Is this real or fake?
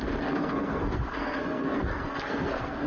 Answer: fake